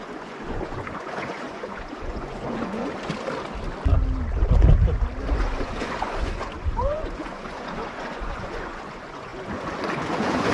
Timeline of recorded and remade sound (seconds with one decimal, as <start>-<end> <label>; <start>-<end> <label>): 0.0-2.9 remade; 2.9-5.3 recorded; 5.3-10.5 remade